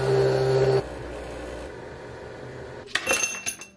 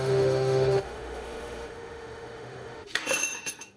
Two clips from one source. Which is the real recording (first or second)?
first